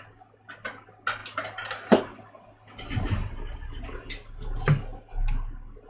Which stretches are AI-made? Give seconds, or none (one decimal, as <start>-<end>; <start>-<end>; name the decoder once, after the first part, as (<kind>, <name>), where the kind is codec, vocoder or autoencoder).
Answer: none